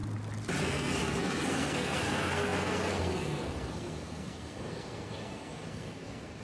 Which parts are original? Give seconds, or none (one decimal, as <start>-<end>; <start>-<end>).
0.0-0.6